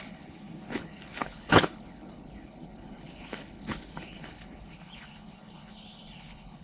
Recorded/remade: remade